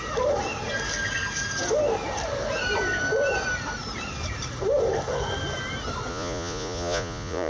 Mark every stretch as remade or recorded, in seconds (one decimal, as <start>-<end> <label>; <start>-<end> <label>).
0.0-6.1 recorded; 6.1-7.5 remade